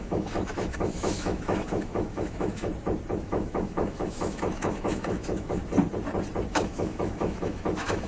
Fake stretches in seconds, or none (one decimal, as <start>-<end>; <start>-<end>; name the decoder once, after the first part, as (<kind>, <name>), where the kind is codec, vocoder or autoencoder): 0.0-2.7 (autoencoder, DAC-VAE); 3.2-5.6; 6.5-8.1